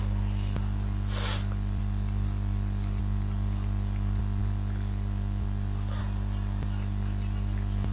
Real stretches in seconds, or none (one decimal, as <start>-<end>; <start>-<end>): 0.0-7.9